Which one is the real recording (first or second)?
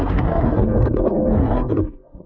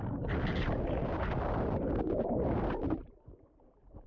second